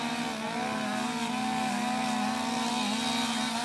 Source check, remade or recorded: recorded